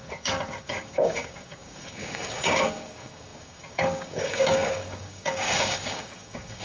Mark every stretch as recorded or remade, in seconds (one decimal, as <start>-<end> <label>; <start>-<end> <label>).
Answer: 0.0-6.6 remade